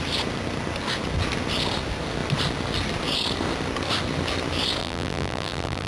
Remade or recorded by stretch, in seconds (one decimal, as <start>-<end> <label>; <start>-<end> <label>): 0.0-4.8 recorded; 4.8-5.9 remade